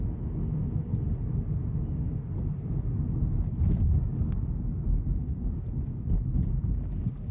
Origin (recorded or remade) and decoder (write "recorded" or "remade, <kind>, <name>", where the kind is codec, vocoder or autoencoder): recorded